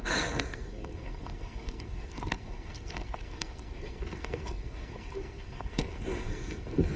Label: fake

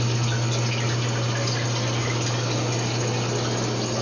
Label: real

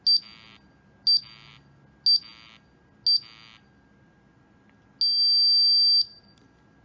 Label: real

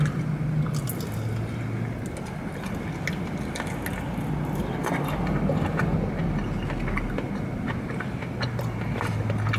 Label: real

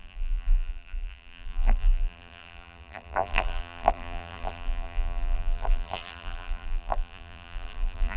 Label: fake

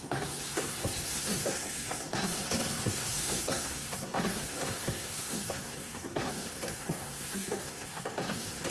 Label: fake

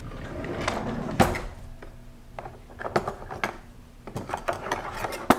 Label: real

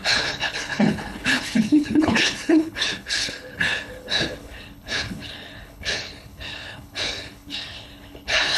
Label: fake